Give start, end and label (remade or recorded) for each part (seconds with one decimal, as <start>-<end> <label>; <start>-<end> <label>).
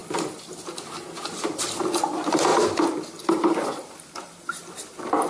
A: 0.0-1.8 recorded; 1.8-5.3 remade